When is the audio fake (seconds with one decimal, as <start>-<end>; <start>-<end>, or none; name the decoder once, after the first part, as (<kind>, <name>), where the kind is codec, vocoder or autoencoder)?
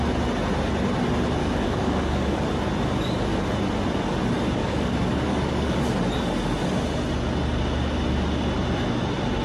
1.4-2.4 (codec, DAC); 4.6-5.8